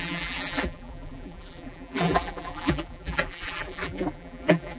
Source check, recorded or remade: remade